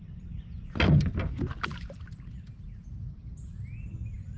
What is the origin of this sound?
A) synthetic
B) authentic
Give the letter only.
B